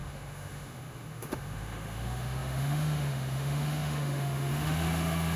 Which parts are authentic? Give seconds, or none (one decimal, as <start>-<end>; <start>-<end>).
none